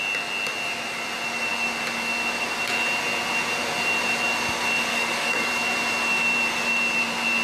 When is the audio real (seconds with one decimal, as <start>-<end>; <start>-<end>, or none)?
0.0-4.9; 5.5-7.4